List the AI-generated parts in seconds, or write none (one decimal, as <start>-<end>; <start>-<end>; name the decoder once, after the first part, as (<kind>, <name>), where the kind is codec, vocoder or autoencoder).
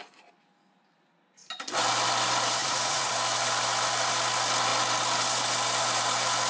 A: 2.6-3.1 (vocoder, Vocos)